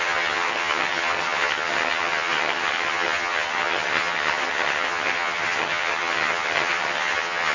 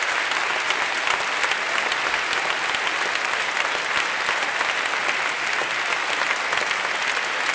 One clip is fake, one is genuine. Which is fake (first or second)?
first